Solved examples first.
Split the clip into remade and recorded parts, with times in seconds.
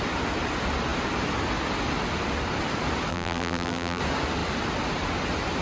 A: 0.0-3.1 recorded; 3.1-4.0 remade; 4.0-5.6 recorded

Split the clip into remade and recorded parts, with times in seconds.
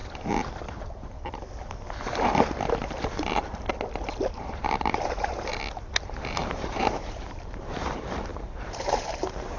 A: 0.0-4.1 recorded; 4.1-5.5 remade; 5.5-6.0 recorded; 6.0-9.6 remade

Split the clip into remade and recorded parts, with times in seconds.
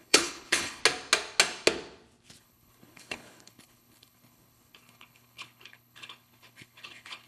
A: 0.0-0.8 remade; 0.8-2.4 recorded; 2.4-7.3 remade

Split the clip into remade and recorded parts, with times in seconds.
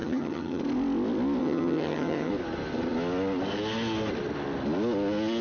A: 0.0-0.6 remade; 0.6-1.4 recorded; 1.4-2.3 remade; 2.3-5.4 recorded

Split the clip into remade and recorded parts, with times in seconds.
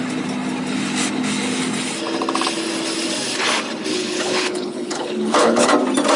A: 0.0-3.9 recorded; 3.9-5.7 remade; 5.7-6.2 recorded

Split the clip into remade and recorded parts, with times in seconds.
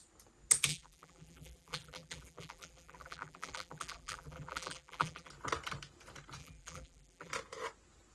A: 0.0-0.7 recorded; 0.7-5.3 remade; 5.3-6.4 recorded; 6.4-7.3 remade; 7.3-8.1 recorded